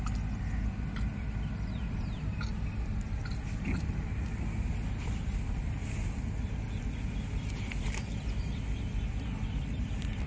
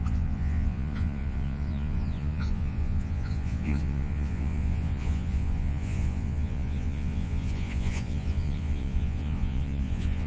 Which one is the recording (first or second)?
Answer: first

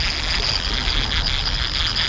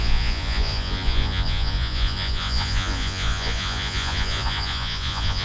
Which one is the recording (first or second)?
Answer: first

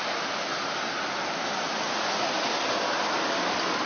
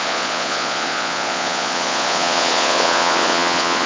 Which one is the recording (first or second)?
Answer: first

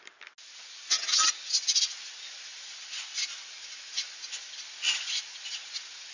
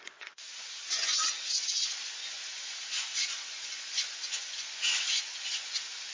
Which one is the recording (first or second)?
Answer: first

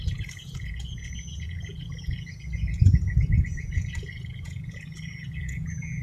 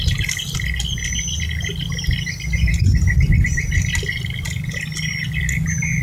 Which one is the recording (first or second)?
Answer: second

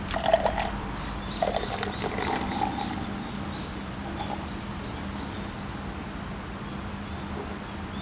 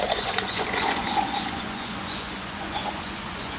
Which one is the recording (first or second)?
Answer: first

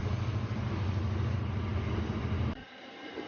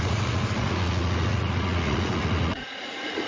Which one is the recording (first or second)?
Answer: first